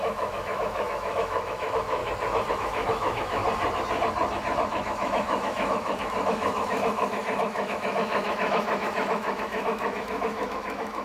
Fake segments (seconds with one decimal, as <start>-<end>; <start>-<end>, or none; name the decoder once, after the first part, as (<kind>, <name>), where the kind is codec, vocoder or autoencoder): 0.0-2.0 (autoencoder, DAC-VAE); 2.5-3.4; 4.7-11.0